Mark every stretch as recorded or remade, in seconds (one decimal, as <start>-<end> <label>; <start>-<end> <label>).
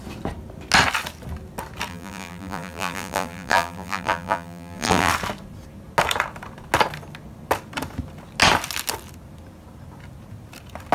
0.0-1.9 recorded; 1.9-5.1 remade; 5.1-10.9 recorded